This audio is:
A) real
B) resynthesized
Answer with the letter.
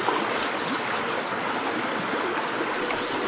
A